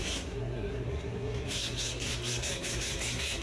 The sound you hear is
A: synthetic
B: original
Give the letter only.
A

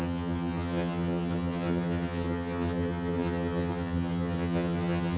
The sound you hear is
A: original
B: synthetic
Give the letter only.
B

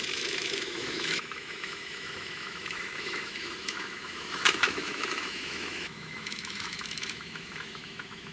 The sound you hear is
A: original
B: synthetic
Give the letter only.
B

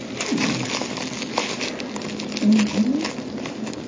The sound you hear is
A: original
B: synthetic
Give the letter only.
A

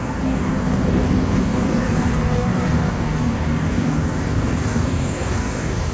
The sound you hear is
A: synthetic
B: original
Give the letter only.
A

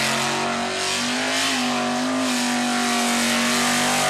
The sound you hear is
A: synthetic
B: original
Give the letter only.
B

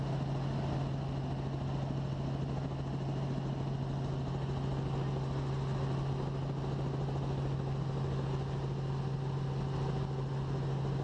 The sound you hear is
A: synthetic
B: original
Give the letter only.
B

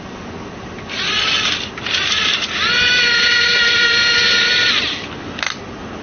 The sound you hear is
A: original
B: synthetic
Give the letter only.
A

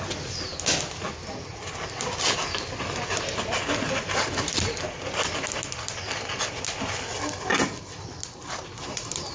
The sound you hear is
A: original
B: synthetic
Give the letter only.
A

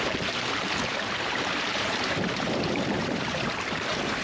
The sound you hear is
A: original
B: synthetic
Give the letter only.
B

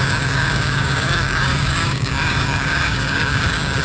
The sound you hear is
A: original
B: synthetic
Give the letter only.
B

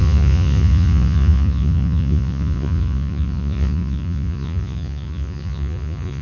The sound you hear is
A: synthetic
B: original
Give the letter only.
A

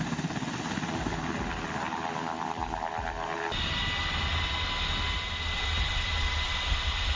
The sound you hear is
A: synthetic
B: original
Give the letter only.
B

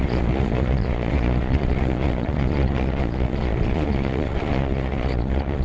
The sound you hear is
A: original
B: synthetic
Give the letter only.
B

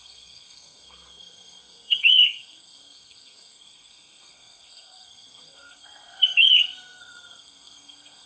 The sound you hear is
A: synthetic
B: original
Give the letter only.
A